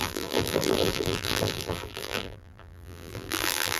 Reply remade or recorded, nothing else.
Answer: remade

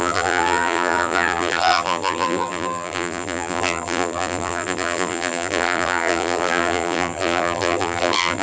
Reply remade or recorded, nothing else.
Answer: remade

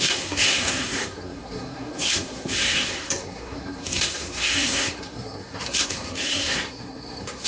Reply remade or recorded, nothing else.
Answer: remade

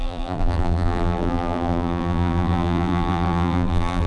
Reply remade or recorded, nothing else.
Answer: remade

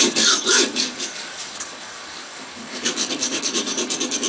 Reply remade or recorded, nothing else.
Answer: remade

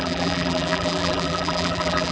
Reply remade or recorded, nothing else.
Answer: remade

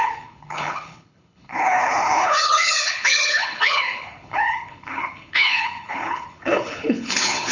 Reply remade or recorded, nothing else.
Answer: remade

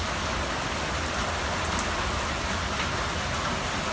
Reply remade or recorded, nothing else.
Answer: recorded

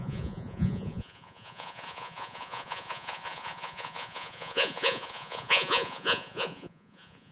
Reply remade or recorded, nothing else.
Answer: remade